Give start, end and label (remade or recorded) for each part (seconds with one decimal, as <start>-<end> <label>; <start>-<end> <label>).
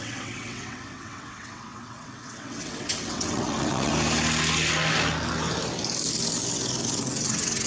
0.0-3.9 remade; 3.9-7.0 recorded; 7.0-7.7 remade